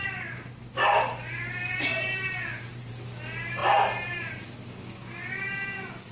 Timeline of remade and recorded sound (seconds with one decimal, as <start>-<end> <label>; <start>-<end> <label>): 0.0-1.9 recorded; 1.9-2.9 remade; 2.9-3.6 recorded; 3.6-4.3 remade; 4.3-6.1 recorded